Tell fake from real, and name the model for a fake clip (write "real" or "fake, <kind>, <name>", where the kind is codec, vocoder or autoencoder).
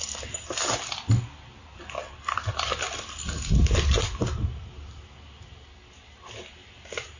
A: real